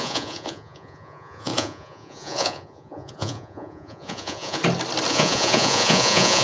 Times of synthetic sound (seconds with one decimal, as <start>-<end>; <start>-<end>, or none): 0.0-4.6; 5.1-6.4